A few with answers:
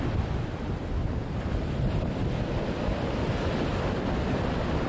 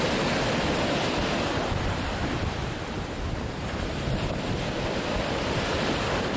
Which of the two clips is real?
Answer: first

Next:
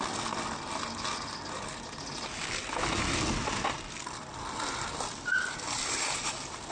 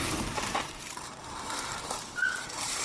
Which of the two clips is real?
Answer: first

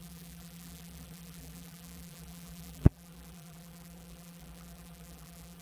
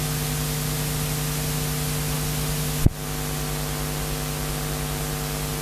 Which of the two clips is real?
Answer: second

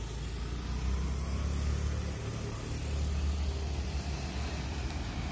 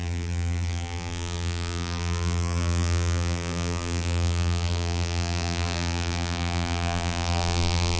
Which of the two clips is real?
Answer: first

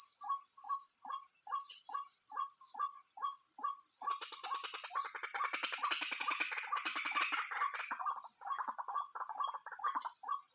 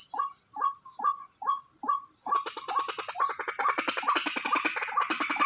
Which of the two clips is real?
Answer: second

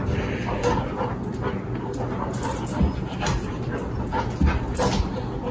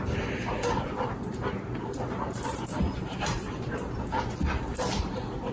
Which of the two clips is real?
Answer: first